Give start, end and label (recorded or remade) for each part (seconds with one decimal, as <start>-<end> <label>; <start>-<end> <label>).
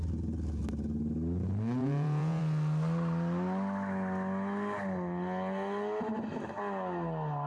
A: 0.0-1.8 recorded; 1.8-2.4 remade; 2.4-7.5 recorded